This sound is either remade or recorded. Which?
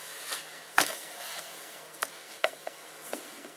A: remade